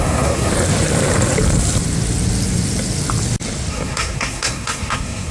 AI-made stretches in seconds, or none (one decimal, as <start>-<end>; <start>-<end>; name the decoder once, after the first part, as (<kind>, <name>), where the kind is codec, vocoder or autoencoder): 0.0-0.5 (codec, SNAC); 3.7-5.3